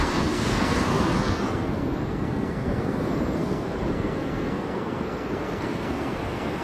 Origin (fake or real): fake